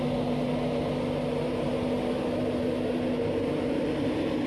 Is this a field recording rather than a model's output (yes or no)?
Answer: yes